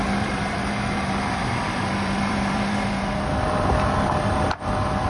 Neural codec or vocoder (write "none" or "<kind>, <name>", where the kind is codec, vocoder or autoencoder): vocoder, BigVGAN v2